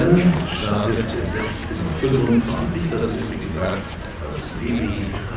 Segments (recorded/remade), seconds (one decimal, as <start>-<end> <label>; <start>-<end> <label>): 0.0-0.6 recorded; 0.6-1.2 remade; 1.2-3.4 recorded; 3.4-4.7 remade; 4.7-5.4 recorded